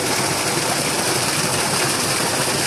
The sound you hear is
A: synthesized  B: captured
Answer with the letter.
B